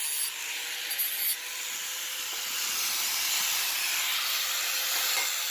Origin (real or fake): real